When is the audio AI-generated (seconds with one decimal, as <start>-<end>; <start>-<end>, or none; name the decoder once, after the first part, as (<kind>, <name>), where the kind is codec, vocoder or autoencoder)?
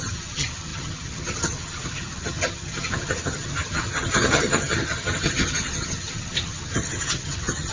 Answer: 0.0-7.7 (vocoder, HiFi-GAN)